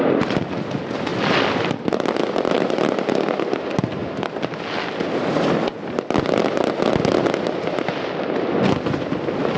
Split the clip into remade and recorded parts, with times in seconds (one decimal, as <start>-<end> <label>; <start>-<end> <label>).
0.0-1.1 recorded; 1.1-3.2 remade; 3.2-9.6 recorded